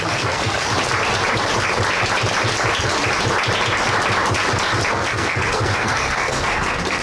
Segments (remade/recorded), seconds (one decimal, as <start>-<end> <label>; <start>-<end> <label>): 0.0-0.7 remade; 0.7-4.9 recorded; 4.9-7.0 remade